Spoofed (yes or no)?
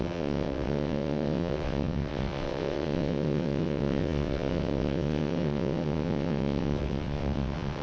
yes